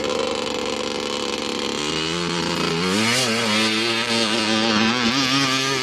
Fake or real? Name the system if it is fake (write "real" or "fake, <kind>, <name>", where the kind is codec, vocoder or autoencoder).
real